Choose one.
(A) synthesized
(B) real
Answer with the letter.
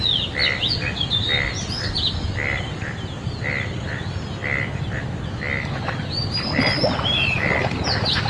B